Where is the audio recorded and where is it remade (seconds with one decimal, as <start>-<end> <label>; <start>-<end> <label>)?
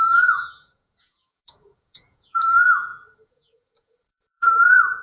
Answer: 0.0-5.0 remade